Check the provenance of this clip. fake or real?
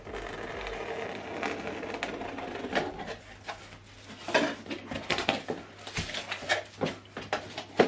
real